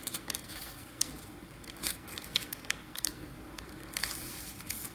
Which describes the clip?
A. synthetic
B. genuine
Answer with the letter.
A